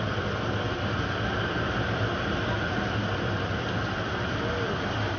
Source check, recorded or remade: recorded